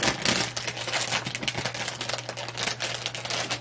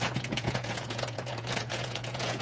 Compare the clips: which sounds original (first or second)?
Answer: first